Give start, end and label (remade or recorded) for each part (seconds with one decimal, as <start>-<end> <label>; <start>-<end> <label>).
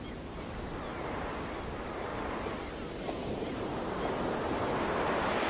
0.0-5.5 recorded